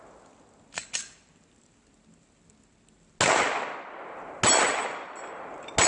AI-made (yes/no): no